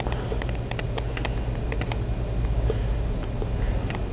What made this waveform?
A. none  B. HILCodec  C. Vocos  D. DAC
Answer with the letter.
A